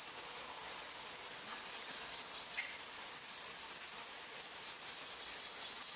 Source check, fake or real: real